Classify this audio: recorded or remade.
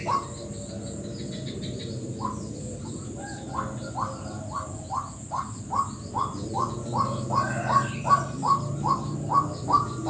recorded